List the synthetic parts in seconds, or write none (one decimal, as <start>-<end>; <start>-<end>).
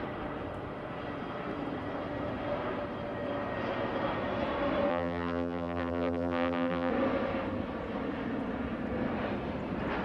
4.9-6.9